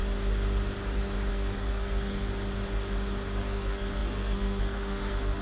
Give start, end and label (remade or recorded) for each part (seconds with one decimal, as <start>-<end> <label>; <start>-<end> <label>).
0.0-1.3 recorded; 1.3-2.3 remade; 2.3-3.4 recorded; 3.4-5.4 remade